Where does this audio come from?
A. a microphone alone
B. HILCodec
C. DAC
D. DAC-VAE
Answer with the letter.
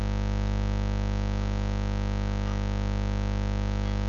A